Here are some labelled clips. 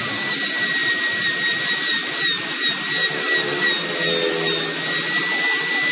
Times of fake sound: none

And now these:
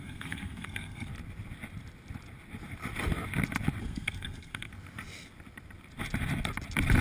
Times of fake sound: 0.0-1.1 (codec, SNAC); 3.8-4.7

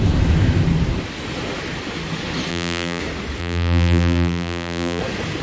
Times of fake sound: 2.5-3.0 (vocoder, BigVGAN v2); 3.4-5.0

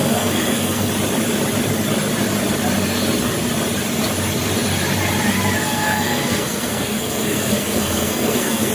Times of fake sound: 0.0-0.9 (codec, SNAC); 5.6-8.7

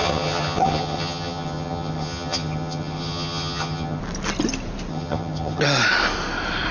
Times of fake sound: 0.0-4.0 (vocoder, HiFi-GAN); 4.9-5.6